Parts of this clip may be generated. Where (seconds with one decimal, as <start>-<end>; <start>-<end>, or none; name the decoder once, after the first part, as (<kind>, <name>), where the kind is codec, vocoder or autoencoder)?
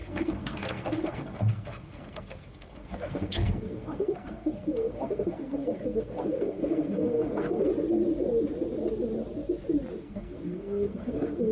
0.0-7.7 (codec, SNAC); 10.0-11.5